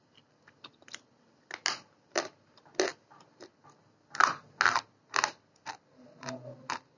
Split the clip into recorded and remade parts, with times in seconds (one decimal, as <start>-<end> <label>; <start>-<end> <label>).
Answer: 0.0-7.0 recorded